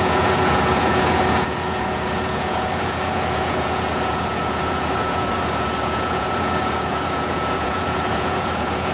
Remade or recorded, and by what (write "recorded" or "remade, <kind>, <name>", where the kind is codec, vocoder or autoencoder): remade, vocoder, Vocos